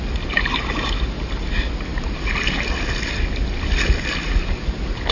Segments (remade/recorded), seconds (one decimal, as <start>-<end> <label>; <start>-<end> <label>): 0.0-5.1 recorded